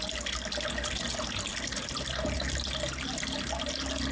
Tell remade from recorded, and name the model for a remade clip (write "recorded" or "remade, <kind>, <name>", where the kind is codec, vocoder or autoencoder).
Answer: recorded